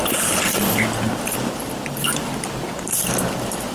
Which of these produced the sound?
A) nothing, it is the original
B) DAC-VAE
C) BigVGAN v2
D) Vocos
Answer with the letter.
C